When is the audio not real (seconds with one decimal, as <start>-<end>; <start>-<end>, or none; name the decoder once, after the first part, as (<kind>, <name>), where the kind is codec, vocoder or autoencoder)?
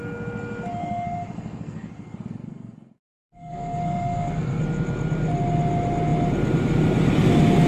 0.8-4.6 (codec, SNAC)